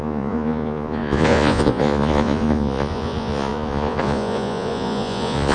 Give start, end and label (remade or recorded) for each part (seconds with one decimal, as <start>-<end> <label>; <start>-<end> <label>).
0.0-5.5 remade